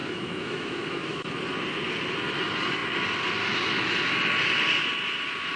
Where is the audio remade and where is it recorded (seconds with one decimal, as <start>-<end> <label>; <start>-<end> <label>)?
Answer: 0.0-1.3 remade; 1.3-5.6 recorded